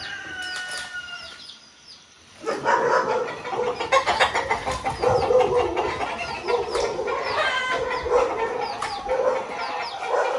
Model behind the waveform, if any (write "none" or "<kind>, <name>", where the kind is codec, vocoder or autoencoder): none